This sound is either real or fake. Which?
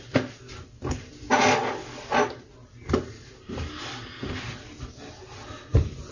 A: real